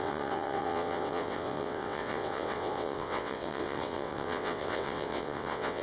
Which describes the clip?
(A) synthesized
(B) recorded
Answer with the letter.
A